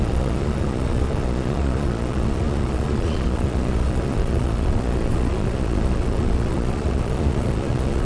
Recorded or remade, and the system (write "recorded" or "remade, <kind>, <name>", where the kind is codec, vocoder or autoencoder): remade, vocoder, Vocos